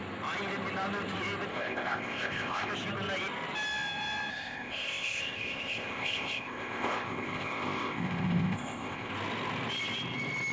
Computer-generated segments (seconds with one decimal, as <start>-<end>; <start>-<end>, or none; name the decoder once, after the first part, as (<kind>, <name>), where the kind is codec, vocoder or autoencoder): 1.5-2.7 (codec, ZipCodec); 4.3-9.1